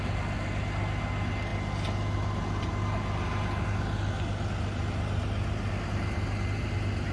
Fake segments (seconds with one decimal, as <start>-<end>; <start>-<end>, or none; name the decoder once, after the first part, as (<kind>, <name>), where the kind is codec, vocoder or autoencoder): none